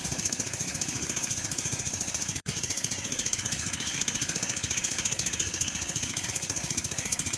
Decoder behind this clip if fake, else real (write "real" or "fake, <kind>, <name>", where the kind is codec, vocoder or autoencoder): fake, codec, SNAC